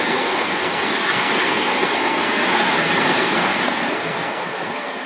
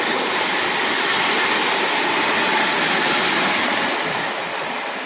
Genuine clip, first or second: second